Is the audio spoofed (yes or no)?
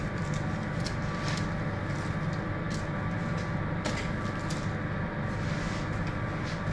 no